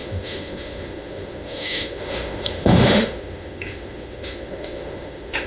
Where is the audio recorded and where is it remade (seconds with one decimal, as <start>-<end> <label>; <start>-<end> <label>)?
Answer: 0.0-5.5 remade